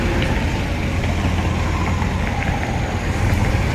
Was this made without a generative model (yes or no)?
yes